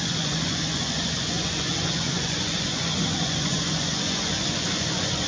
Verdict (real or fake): fake